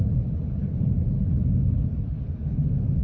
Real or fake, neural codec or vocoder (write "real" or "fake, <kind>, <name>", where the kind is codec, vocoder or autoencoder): real